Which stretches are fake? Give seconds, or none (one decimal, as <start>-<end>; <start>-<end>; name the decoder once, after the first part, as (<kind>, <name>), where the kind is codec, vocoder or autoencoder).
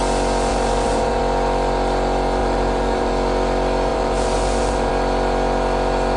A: 0.5-1.2 (vocoder, BigVGAN v2); 2.4-3.1; 3.9-4.9